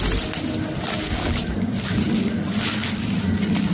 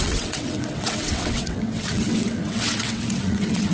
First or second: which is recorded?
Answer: first